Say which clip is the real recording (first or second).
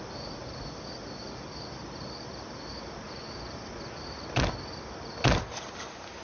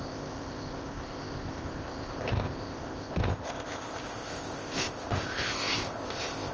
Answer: first